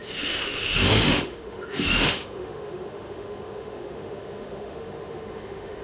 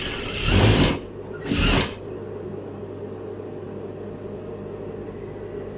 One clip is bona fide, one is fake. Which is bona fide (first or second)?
second